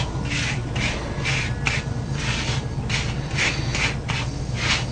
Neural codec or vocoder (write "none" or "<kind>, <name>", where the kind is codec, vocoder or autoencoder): none